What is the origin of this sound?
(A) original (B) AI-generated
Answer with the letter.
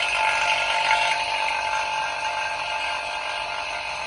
A